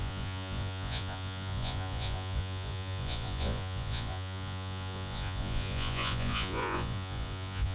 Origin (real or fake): fake